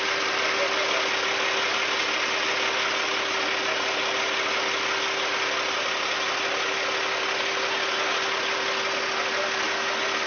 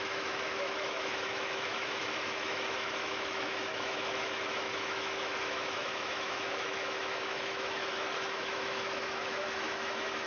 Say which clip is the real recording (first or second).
first